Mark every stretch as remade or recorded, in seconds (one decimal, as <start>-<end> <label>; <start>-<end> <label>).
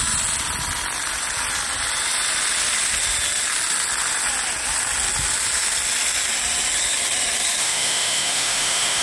0.0-7.6 recorded; 7.6-9.0 remade